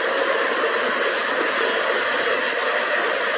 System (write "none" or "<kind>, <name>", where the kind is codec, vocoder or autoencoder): none